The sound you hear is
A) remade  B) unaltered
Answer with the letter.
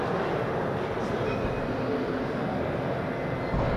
B